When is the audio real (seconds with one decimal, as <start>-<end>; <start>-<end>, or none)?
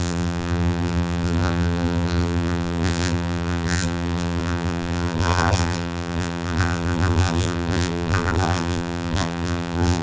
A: none